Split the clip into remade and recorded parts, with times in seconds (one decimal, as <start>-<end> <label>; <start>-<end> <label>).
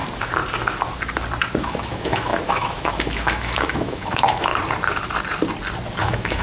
0.0-1.6 recorded; 1.6-4.5 remade; 4.5-6.0 recorded; 6.0-6.4 remade